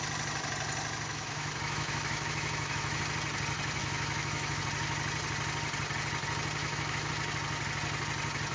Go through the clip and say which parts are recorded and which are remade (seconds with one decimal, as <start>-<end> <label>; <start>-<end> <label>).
0.0-1.1 recorded; 1.1-3.0 remade; 3.0-3.8 recorded; 3.8-4.6 remade; 4.6-6.6 recorded; 6.6-7.1 remade; 7.1-8.5 recorded